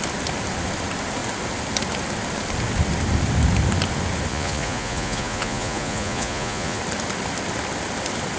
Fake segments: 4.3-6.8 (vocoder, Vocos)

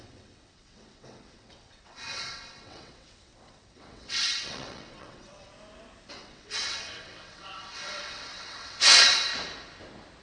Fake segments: 0.0-5.5 (vocoder, WaveNeXt); 6.1-9.3